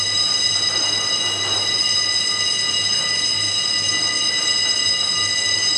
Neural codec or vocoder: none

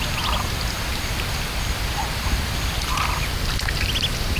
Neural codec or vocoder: none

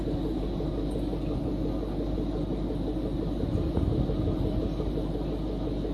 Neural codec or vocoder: none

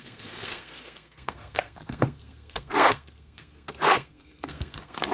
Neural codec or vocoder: codec, SNAC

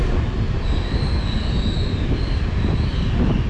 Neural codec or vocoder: none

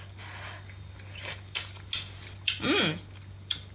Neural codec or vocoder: none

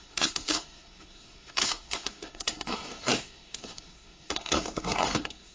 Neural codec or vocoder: codec, SNAC